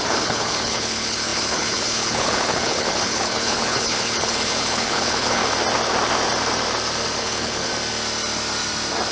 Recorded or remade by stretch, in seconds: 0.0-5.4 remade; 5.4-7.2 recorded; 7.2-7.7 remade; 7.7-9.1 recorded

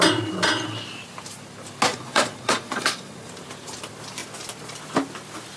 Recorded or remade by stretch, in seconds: 0.0-1.9 recorded; 1.9-3.3 remade; 3.3-5.6 recorded

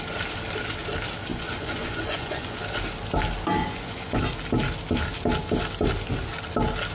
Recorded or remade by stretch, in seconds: 0.0-1.3 recorded; 1.3-2.6 remade; 2.6-3.6 recorded; 3.6-4.2 remade; 4.2-6.9 recorded

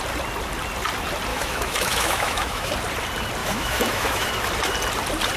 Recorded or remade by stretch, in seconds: 0.0-1.3 recorded; 1.3-2.7 remade; 2.7-3.4 recorded; 3.4-4.3 remade; 4.3-5.4 recorded

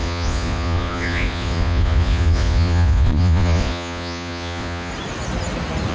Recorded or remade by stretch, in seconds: 0.0-4.9 remade; 4.9-5.9 recorded

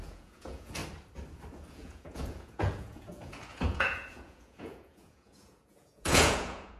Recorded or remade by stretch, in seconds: 0.0-0.8 remade; 0.8-1.7 recorded; 1.7-6.8 remade

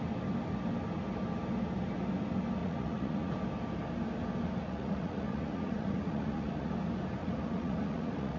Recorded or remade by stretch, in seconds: 0.0-2.6 recorded; 2.6-3.3 remade; 3.3-4.6 recorded; 4.6-6.7 remade; 6.7-7.2 recorded; 7.2-8.4 remade

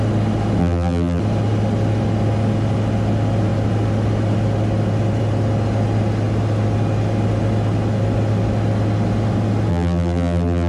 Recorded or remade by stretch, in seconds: 0.0-0.6 recorded; 0.6-1.2 remade; 1.2-9.7 recorded; 9.7-10.7 remade